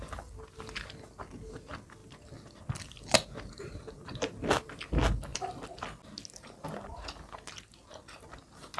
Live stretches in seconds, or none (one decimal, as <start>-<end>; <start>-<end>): 0.0-8.8